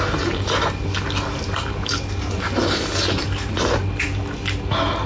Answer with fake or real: real